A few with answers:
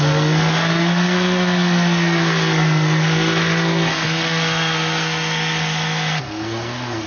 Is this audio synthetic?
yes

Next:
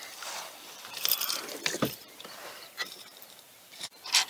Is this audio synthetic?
yes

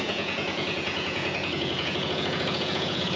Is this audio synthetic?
yes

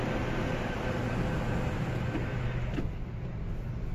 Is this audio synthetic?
no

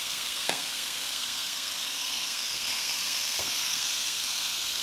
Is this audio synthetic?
yes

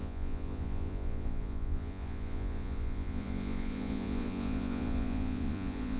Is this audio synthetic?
yes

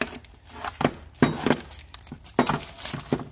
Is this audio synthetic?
no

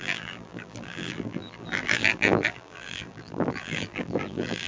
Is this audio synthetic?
yes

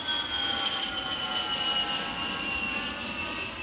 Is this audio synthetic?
no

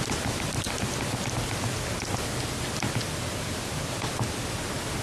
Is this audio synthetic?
no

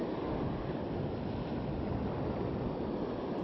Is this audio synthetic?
no